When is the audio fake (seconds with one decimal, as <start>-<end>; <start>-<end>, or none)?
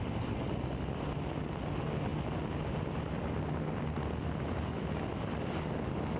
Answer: none